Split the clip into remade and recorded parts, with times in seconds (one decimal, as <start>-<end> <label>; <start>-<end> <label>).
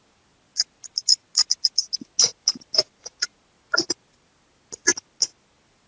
0.0-5.9 recorded